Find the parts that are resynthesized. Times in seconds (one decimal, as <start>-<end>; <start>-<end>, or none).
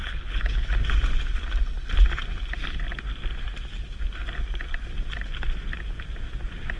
0.0-0.7